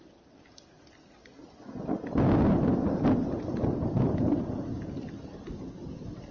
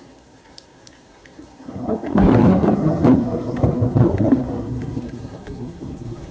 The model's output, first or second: second